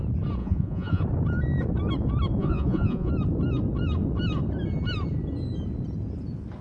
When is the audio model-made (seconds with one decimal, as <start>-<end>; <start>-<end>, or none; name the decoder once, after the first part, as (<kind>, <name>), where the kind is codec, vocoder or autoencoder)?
0.4-1.0 (vocoder, Vocos); 2.4-3.1